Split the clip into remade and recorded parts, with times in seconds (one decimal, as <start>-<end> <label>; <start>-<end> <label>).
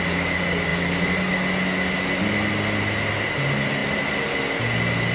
0.0-5.1 recorded